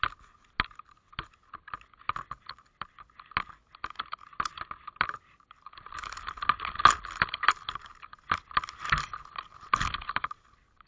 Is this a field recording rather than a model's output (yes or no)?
yes